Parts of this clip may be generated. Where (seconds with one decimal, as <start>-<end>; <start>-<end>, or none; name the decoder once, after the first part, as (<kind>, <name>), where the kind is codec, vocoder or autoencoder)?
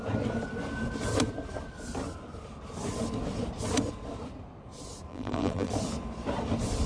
5.1-5.7 (vocoder, BigVGAN v2)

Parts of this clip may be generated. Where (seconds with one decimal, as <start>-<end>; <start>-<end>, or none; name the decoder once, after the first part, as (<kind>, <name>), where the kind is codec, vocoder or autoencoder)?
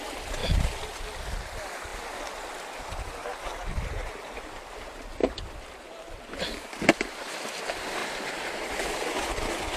0.4-1.0 (vocoder, BigVGAN v2); 8.0-8.7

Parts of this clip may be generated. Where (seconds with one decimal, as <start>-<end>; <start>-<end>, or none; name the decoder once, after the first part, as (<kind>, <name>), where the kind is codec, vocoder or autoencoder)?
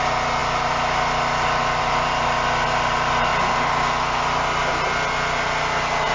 none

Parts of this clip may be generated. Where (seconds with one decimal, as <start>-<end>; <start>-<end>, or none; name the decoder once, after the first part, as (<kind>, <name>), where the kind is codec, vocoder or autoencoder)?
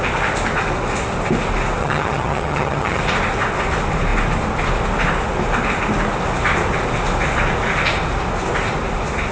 1.8-3.0 (vocoder, HiFi-GAN)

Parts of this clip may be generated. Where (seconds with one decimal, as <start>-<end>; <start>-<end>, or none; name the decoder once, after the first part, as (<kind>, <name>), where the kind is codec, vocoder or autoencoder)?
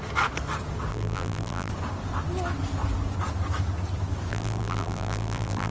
0.9-1.7 (vocoder, BigVGAN v2); 4.3-5.7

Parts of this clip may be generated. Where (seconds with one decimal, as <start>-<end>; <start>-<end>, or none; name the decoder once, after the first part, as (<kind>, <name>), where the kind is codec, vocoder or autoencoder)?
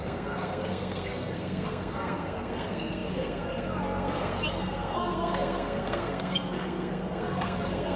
0.0-8.0 (codec, SNAC)